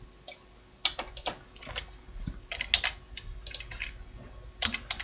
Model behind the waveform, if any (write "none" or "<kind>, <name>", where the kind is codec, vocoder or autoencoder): none